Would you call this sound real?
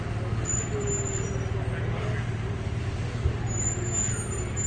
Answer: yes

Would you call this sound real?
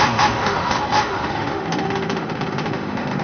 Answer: no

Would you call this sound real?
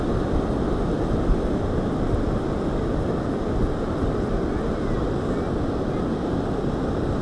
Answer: yes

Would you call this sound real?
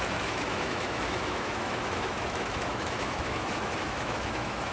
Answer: no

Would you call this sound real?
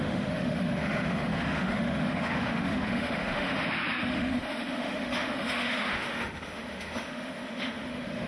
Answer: no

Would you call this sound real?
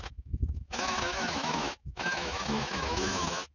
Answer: no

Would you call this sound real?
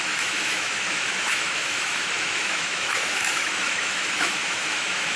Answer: no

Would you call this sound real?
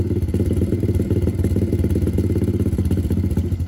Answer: yes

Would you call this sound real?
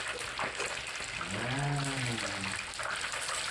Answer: yes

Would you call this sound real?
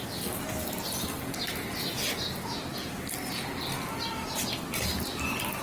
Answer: yes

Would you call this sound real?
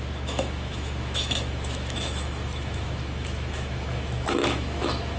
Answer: no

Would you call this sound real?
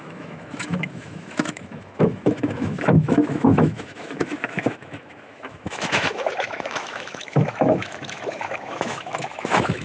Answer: no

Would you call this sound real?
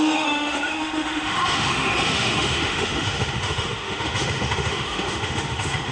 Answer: no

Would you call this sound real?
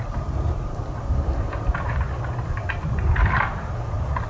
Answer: yes